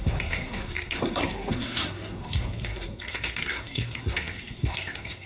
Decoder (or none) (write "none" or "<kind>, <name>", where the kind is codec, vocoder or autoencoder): codec, SNAC